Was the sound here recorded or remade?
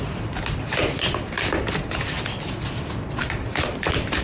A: remade